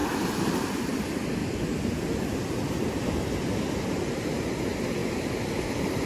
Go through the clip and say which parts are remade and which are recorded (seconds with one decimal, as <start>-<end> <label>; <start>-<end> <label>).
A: 0.0-1.4 remade; 1.4-3.9 recorded; 3.9-5.0 remade; 5.0-5.5 recorded; 5.5-6.1 remade